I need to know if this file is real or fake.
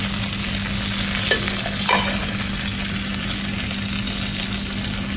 real